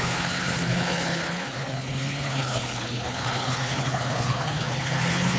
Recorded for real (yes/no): no